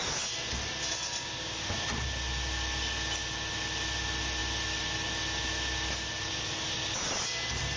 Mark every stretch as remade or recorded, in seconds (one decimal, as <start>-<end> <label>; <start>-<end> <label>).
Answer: 0.0-7.8 recorded

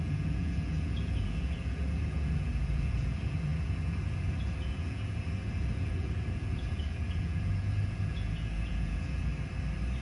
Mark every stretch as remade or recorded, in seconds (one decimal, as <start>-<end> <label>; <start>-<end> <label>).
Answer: 0.0-9.3 remade; 9.3-10.0 recorded

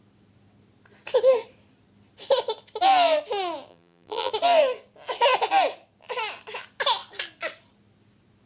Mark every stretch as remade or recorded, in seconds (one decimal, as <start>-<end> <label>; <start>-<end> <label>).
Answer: 0.0-3.7 recorded; 3.7-4.3 remade; 4.3-8.5 recorded

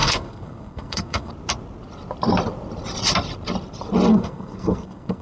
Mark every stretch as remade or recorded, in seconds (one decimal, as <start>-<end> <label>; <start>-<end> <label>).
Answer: 0.0-1.3 remade; 1.3-4.1 recorded; 4.1-5.2 remade

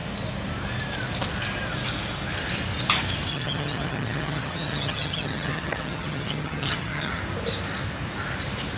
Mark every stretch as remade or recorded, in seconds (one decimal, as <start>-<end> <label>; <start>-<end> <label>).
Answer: 0.0-3.3 recorded; 3.3-7.2 remade; 7.2-8.8 recorded